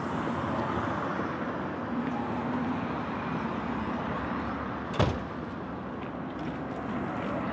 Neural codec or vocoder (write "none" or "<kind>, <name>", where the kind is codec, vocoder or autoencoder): none